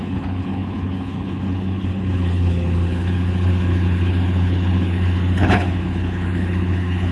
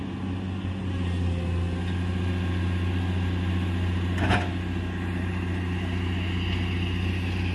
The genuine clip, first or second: second